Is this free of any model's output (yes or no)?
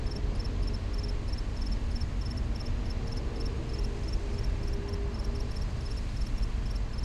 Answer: yes